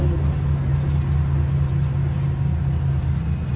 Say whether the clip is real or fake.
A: real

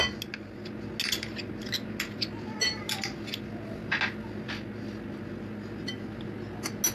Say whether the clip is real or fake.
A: real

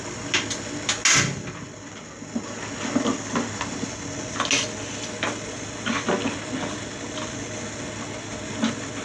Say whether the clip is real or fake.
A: real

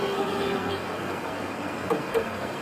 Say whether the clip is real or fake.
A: fake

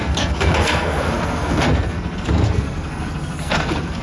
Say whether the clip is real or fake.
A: fake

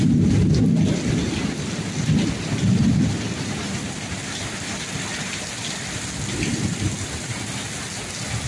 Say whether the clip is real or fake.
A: real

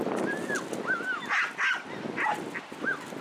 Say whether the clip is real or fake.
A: real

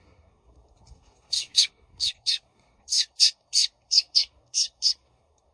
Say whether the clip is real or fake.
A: fake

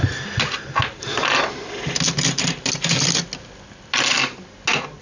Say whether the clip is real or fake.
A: real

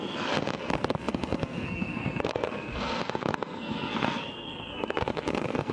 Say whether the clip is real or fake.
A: fake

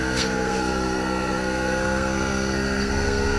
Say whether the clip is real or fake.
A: fake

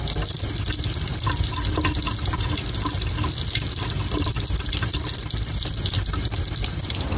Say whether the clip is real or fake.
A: real